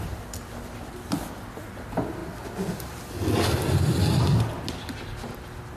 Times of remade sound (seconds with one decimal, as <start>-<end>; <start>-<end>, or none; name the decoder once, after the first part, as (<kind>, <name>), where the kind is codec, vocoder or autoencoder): none